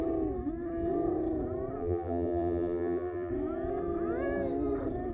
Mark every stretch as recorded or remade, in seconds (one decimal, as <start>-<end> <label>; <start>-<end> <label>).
0.0-1.8 recorded; 1.8-3.3 remade; 3.3-5.1 recorded

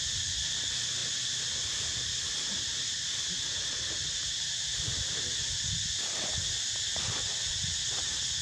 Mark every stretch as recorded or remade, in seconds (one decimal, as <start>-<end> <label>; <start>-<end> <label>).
0.0-6.9 recorded; 6.9-7.5 remade; 7.5-8.4 recorded

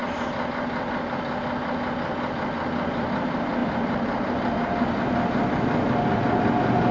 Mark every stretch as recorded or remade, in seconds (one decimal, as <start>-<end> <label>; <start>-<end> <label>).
0.0-3.6 recorded; 3.6-4.3 remade; 4.3-6.9 recorded

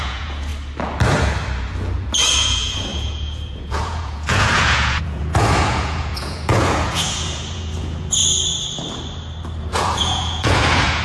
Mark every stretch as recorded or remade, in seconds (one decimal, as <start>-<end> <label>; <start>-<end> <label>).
0.0-0.5 remade; 0.5-2.4 recorded; 2.4-8.2 remade; 8.2-9.6 recorded; 9.6-11.0 remade

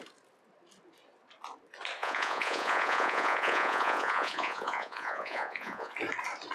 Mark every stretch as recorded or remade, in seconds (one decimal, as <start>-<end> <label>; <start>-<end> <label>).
0.0-2.0 recorded; 2.0-5.9 remade; 5.9-6.5 recorded

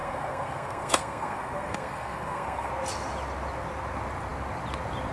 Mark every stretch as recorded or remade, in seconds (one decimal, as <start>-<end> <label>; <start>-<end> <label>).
0.0-2.7 remade; 2.7-5.1 recorded

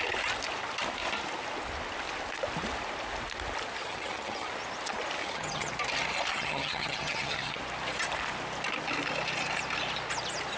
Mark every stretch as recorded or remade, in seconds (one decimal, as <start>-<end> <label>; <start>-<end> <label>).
0.0-3.8 recorded; 3.8-4.5 remade; 4.5-5.2 recorded; 5.2-5.7 remade; 5.7-6.3 recorded; 6.3-7.6 remade; 7.6-10.6 recorded

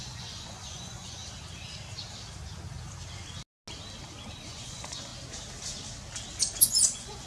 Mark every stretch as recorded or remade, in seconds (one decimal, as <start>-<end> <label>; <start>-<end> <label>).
0.0-1.2 remade; 1.2-4.4 recorded; 4.4-5.1 remade; 5.1-6.6 recorded; 6.6-7.3 remade